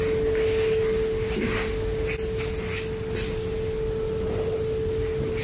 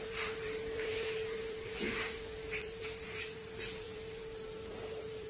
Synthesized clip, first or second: second